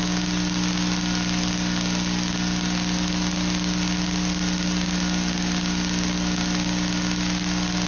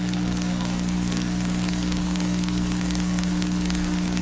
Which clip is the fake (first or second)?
second